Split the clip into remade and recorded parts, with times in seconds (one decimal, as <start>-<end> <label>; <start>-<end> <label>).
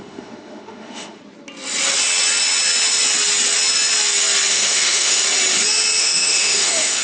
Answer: 0.0-1.2 remade; 1.2-4.5 recorded; 4.5-5.2 remade; 5.2-6.0 recorded; 6.0-7.0 remade